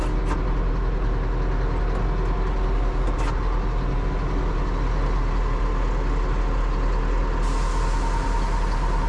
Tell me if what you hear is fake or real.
real